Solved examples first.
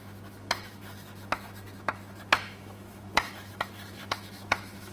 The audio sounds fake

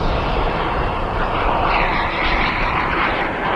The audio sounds fake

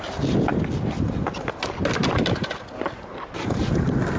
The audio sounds real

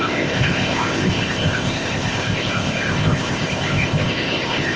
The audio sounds fake